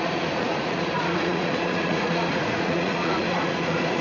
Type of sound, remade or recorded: remade